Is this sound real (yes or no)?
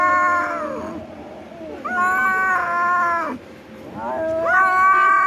yes